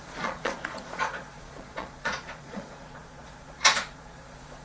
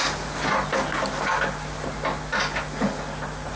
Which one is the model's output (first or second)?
first